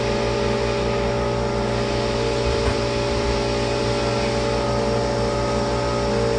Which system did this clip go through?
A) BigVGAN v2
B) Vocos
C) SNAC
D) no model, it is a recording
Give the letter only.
D